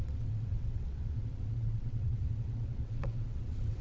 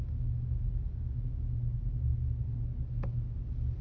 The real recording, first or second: second